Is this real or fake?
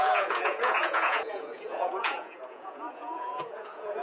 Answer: fake